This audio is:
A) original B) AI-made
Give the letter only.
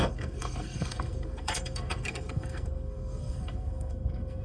B